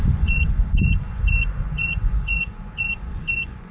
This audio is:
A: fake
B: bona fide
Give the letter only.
A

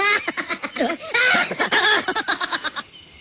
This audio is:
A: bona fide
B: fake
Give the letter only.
A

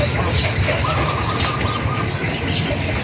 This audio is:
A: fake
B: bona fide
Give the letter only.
B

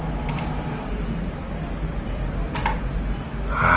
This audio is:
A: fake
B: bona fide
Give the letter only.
B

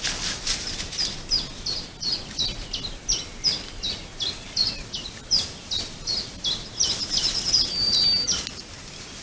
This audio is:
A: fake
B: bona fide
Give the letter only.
B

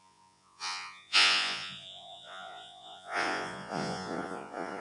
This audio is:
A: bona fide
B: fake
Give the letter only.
B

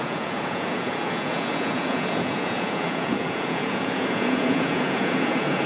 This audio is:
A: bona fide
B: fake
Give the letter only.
B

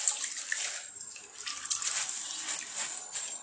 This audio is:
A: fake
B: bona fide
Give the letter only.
B